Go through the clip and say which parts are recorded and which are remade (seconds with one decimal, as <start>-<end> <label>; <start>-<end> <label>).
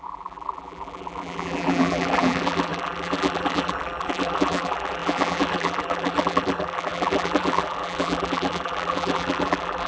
0.0-9.9 remade